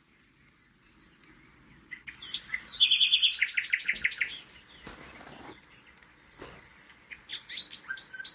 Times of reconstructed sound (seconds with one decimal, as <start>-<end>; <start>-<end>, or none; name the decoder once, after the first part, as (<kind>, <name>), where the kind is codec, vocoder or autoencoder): none